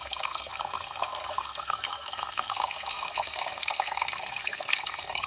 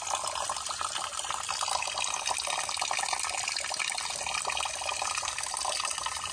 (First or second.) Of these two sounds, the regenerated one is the first